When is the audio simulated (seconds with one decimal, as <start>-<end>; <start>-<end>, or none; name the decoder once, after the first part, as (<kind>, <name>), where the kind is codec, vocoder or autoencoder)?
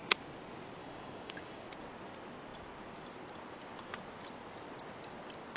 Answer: 0.8-1.6 (codec, DAC)